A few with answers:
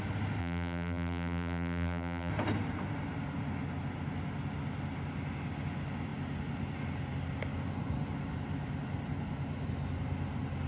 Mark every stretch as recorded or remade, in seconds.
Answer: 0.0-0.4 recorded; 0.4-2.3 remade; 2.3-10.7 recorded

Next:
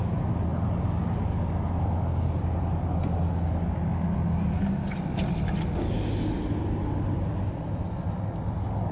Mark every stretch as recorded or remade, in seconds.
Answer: 0.0-8.9 recorded